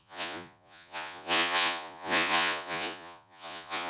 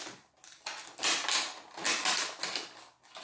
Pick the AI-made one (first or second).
first